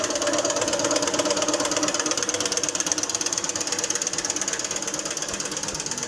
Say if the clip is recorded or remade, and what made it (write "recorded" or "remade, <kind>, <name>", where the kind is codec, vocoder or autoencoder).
recorded